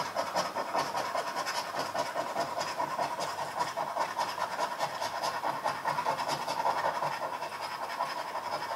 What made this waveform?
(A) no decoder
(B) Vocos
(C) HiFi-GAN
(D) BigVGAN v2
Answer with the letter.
A